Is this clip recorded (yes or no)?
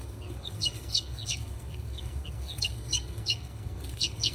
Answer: no